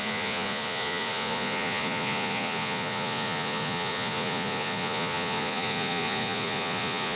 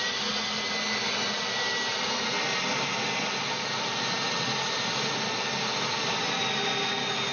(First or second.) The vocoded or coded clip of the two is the first